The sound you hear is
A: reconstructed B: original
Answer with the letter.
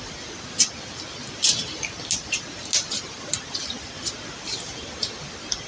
B